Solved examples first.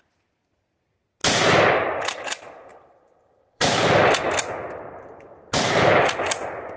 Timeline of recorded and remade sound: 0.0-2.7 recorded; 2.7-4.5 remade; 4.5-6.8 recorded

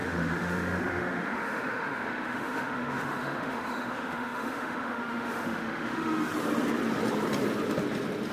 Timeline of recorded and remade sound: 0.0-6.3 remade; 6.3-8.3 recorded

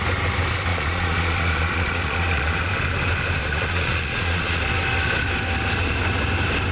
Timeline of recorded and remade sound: 0.0-0.7 recorded; 0.7-2.7 remade; 2.7-3.4 recorded; 3.4-4.6 remade; 4.6-6.7 recorded

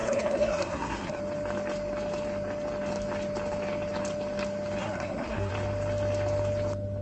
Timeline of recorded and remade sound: 0.0-1.2 remade; 1.2-4.8 recorded; 4.8-5.5 remade; 5.5-7.0 recorded

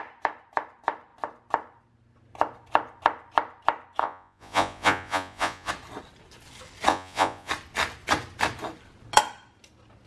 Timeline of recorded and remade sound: 0.0-4.0 recorded; 4.0-5.7 remade; 5.7-6.9 recorded; 6.9-7.5 remade; 7.5-10.1 recorded

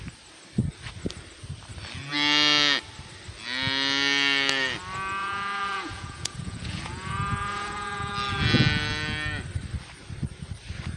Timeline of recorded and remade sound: 0.0-5.2 recorded; 5.2-8.1 remade; 8.1-11.0 recorded

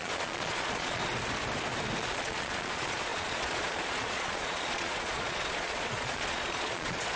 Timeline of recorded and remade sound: 0.0-1.0 remade; 1.0-2.0 recorded; 2.0-7.2 remade

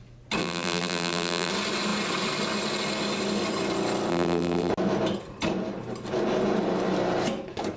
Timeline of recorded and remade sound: 0.0-0.4 recorded; 0.4-1.5 remade; 1.5-4.1 recorded; 4.1-4.7 remade; 4.7-7.8 recorded